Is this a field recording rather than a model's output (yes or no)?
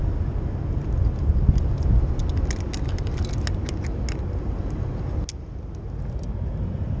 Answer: yes